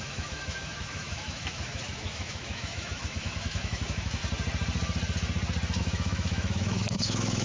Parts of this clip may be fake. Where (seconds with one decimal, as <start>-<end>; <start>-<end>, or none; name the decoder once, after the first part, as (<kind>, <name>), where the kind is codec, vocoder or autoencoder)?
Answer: 0.0-4.2 (autoencoder, DAC-VAE); 5.8-7.4

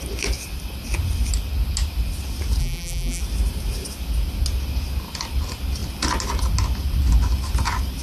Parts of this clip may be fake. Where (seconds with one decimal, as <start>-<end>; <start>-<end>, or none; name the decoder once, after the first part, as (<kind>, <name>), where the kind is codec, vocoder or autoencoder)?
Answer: 2.6-3.2 (vocoder, BigVGAN v2)

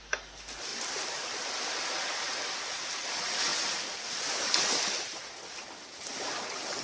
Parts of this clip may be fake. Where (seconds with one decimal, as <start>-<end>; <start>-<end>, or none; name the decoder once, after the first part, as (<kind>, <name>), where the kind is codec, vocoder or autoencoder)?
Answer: 0.7-2.3 (vocoder, BigVGAN v2); 3.5-4.1

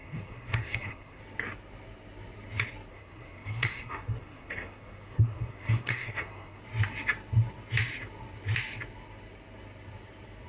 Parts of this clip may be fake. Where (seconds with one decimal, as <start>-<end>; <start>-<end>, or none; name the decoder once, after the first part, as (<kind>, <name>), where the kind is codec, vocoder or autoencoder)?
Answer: 0.0-1.2 (codec, SNAC); 2.9-6.6

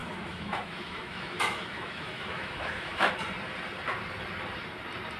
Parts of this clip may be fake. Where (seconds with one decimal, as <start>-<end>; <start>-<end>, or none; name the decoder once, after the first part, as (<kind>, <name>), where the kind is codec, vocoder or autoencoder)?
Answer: 0.0-3.1 (autoencoder, DAC-VAE)

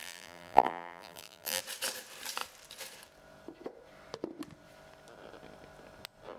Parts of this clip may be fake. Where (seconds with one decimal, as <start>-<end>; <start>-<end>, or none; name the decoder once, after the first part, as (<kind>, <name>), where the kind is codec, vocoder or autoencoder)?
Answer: 0.0-1.6 (vocoder, BigVGAN v2)